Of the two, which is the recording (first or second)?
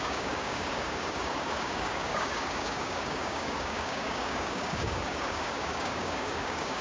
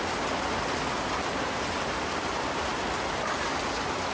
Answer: second